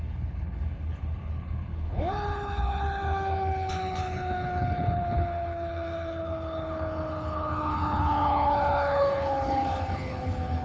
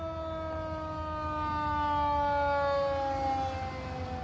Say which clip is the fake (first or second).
first